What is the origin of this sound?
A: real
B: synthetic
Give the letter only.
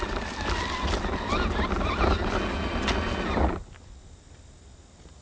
A